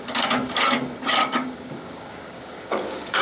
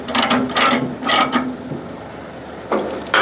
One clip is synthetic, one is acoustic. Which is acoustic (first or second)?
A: second